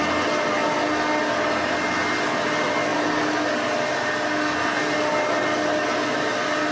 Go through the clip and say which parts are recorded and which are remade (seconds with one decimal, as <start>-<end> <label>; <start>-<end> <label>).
0.0-6.7 recorded